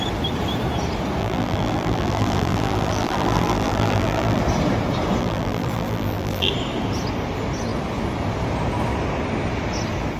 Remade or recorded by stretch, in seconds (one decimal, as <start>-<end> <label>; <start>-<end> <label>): 0.0-1.2 recorded; 1.2-4.4 remade; 4.4-5.2 recorded; 5.2-6.5 remade; 6.5-10.2 recorded